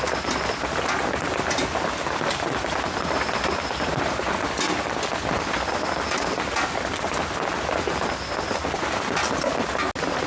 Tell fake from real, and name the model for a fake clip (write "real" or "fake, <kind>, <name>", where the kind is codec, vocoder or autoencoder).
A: real